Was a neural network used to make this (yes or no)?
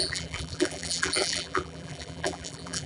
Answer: yes